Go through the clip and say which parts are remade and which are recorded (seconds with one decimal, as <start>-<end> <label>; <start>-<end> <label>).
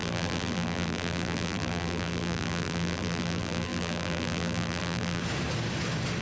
0.0-5.2 remade; 5.2-6.2 recorded